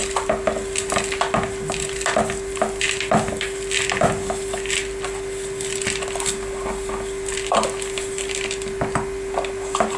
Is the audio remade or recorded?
recorded